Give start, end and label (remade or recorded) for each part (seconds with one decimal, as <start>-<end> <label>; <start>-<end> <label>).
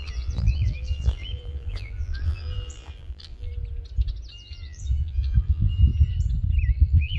0.0-3.5 remade; 3.5-4.3 recorded; 4.3-5.9 remade; 5.9-6.8 recorded; 6.8-7.2 remade